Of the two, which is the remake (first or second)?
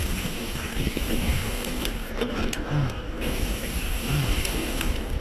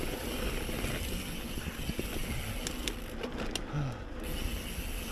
first